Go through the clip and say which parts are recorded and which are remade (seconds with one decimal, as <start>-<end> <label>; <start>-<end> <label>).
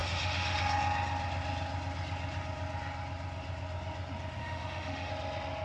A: 0.0-0.6 remade; 0.6-4.4 recorded; 4.4-5.1 remade; 5.1-5.6 recorded